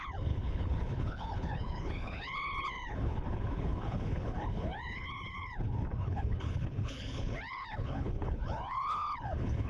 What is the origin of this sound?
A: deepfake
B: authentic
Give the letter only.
A